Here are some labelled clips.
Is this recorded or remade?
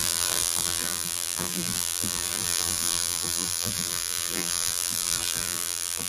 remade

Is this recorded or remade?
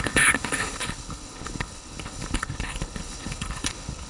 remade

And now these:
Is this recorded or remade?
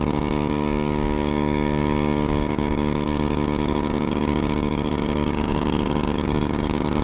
remade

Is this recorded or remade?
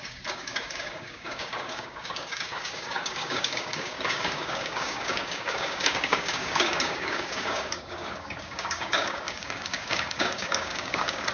remade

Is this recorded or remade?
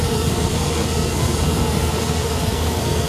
remade